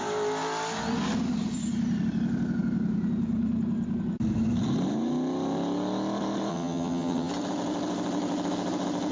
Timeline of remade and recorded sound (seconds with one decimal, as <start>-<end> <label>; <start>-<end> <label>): 0.0-6.5 recorded; 6.5-7.3 remade; 7.3-9.1 recorded